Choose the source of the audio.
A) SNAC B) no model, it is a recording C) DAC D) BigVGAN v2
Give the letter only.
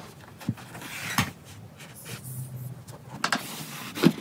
B